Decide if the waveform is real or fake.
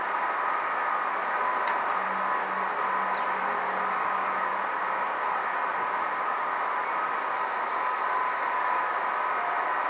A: real